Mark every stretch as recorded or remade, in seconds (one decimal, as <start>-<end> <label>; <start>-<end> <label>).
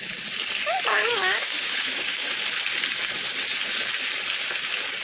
0.0-1.0 recorded; 1.0-2.4 remade; 2.4-5.0 recorded